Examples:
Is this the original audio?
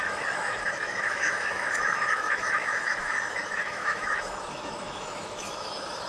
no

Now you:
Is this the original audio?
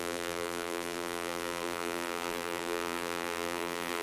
no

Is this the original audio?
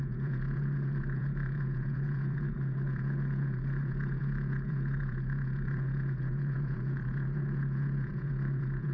no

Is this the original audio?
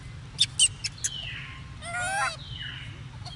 yes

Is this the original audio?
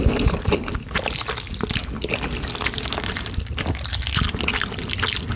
yes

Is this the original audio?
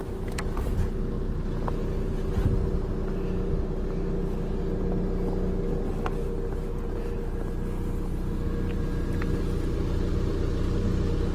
yes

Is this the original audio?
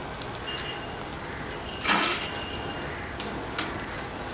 yes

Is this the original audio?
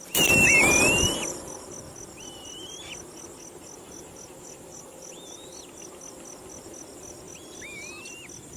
yes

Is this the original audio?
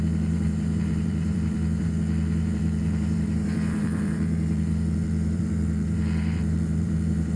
no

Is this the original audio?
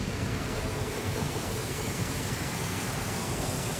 no